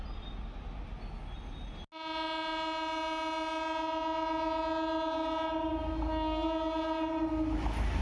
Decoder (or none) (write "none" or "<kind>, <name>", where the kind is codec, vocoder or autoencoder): none